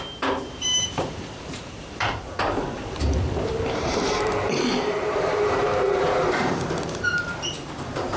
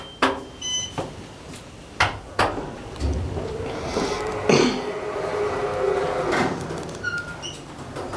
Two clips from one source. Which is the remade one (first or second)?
first